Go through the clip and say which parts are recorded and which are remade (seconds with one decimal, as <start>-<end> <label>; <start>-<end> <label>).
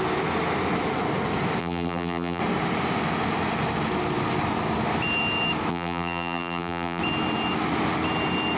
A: 0.0-1.6 recorded; 1.6-2.4 remade; 2.4-5.7 recorded; 5.7-7.0 remade; 7.0-8.6 recorded